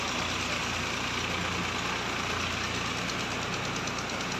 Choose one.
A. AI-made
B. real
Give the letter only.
B